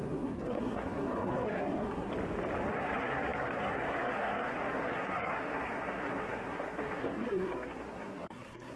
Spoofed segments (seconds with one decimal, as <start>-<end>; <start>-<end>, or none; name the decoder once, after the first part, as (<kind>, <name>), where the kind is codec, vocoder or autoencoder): 0.0-2.1 (codec, SNAC); 2.7-8.8